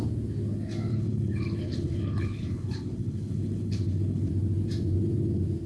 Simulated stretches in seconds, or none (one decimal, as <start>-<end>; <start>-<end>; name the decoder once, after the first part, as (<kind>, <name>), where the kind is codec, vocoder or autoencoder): 0.9-4.3 (codec, HILCodec)